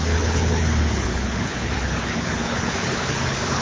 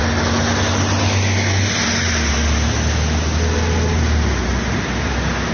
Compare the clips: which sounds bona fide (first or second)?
second